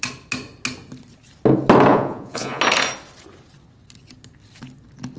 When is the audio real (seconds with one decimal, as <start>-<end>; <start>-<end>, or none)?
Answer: 0.0-1.9; 2.6-5.2